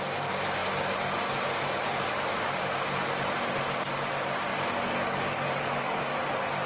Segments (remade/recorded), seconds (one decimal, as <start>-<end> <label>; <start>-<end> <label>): 0.0-4.5 recorded; 4.5-6.0 remade; 6.0-6.7 recorded